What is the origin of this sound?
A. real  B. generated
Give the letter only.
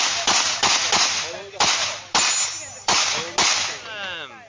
A